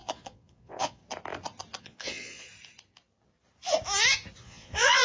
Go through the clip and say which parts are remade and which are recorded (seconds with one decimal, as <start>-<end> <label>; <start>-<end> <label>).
0.0-1.0 remade; 1.0-1.8 recorded; 1.8-2.5 remade; 2.5-4.4 recorded; 4.4-5.0 remade